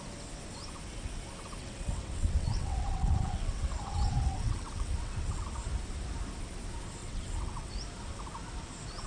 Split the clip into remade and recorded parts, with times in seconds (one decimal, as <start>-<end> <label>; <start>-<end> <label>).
0.0-1.6 recorded; 1.6-5.5 remade; 5.5-7.0 recorded; 7.0-7.7 remade; 7.7-9.1 recorded